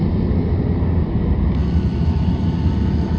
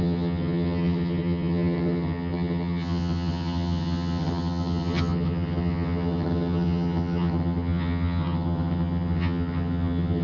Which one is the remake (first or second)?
second